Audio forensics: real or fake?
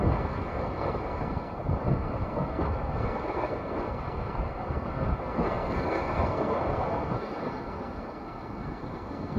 fake